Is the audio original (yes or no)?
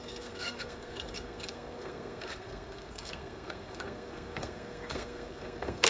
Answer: no